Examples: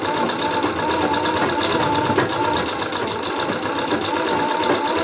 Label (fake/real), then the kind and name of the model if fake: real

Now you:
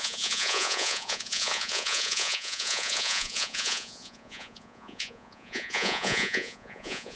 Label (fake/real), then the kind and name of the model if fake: fake, vocoder, Vocos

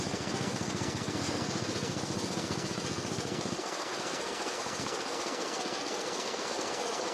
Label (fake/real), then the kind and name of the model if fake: fake, codec, SNAC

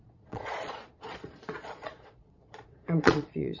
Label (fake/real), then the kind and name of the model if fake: fake, vocoder, Vocos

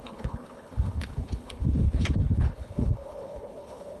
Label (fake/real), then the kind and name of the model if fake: fake, codec, HILCodec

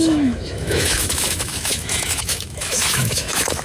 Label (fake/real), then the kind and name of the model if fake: fake, autoencoder, DAC-VAE